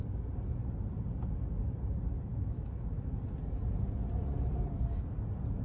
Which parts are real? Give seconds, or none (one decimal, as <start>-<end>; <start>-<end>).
0.0-2.3; 3.2-5.6